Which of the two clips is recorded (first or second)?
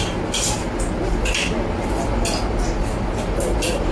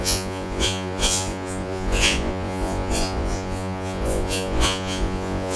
first